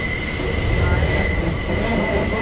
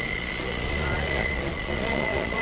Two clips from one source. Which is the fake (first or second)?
second